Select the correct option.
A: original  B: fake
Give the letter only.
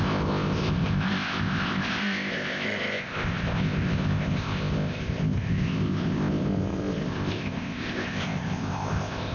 B